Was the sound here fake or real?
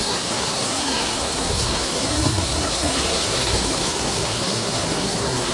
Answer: fake